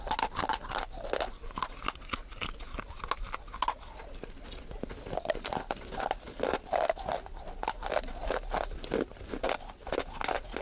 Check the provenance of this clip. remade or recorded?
recorded